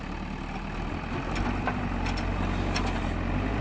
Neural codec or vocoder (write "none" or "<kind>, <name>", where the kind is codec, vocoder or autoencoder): none